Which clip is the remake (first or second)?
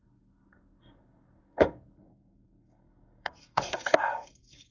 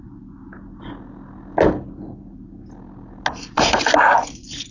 first